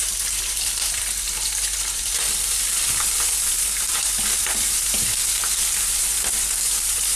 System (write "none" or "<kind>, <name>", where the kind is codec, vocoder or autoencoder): vocoder, BigVGAN v2